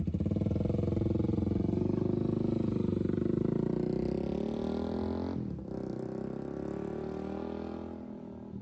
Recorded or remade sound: recorded